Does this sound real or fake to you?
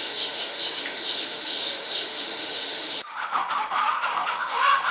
fake